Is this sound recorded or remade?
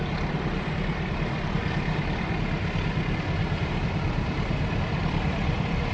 remade